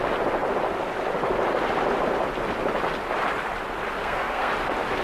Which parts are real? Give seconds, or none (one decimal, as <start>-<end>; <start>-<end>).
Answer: 0.0-4.0; 4.5-5.0